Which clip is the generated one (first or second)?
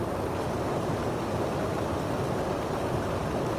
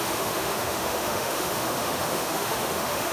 second